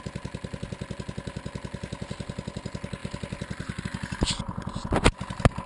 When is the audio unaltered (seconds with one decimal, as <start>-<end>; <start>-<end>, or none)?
0.0-3.0; 3.8-5.7